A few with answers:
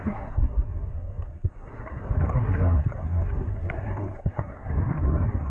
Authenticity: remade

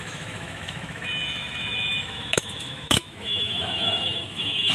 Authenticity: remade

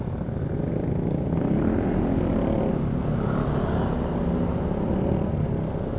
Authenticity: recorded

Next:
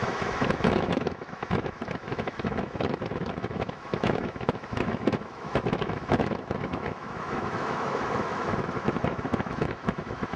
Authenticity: remade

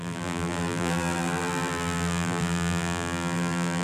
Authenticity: remade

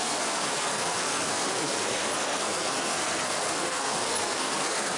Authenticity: remade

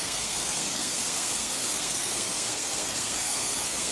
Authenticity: remade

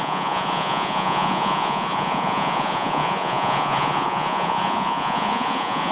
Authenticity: remade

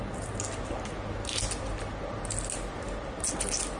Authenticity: recorded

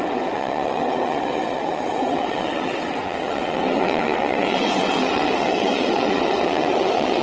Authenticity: remade